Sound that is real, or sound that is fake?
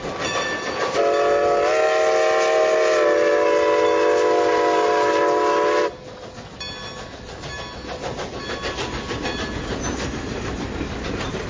real